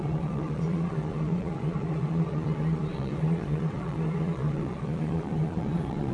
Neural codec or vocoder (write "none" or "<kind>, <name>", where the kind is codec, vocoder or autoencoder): vocoder, Vocos